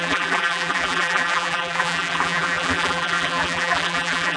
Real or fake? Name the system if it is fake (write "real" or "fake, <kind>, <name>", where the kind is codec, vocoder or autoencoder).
fake, vocoder, BigVGAN v2